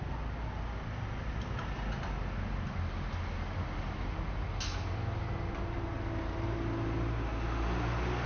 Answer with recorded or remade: recorded